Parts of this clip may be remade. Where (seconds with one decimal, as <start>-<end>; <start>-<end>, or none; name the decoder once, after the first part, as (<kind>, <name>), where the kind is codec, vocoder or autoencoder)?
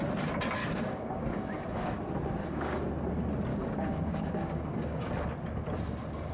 0.6-2.0 (codec, DAC); 2.4-2.9; 3.5-5.1